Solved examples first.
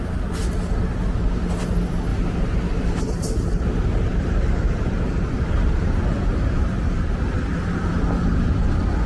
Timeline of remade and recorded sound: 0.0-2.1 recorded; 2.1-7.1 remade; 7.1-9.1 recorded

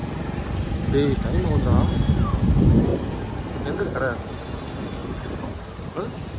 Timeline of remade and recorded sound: 0.0-2.9 recorded; 2.9-3.4 remade; 3.4-5.0 recorded; 5.0-6.4 remade

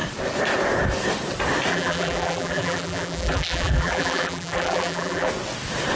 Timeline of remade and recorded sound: 0.0-1.7 recorded; 1.7-5.3 remade; 5.3-6.0 recorded

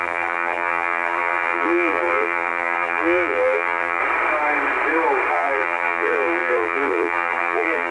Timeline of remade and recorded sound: 0.0-4.0 remade; 4.0-5.3 recorded; 5.3-7.9 remade